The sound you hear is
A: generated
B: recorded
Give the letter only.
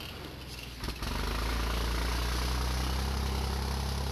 B